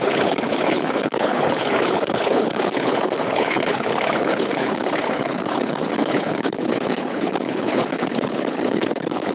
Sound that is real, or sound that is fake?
fake